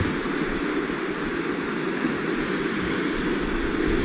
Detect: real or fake real